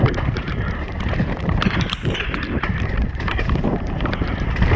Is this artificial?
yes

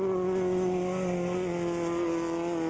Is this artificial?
no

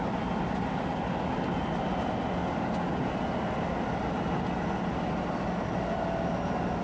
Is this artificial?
no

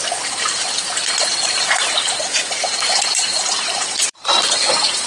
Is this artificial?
yes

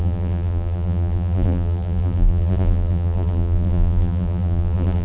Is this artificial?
yes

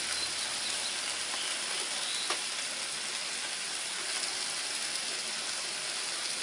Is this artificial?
no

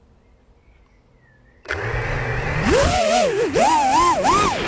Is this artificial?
yes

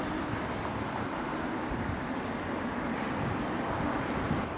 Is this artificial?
yes